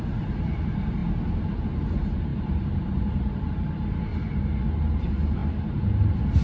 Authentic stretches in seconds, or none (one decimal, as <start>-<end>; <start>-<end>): 4.1-5.0

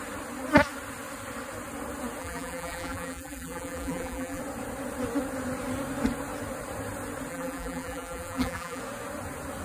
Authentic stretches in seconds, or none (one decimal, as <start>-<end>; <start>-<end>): 0.0-2.2; 4.4-7.3; 8.8-9.6